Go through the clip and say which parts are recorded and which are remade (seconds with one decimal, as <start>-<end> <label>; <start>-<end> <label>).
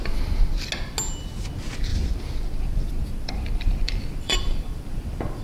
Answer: 0.0-1.9 recorded; 1.9-5.4 remade